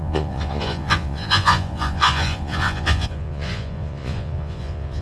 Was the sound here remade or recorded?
remade